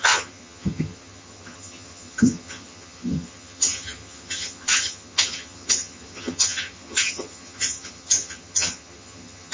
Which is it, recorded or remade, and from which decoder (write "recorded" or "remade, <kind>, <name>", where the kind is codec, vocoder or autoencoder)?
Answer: remade, vocoder, HiFi-GAN